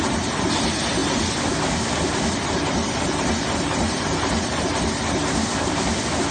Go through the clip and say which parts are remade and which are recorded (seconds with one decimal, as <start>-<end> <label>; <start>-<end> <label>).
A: 0.0-6.3 recorded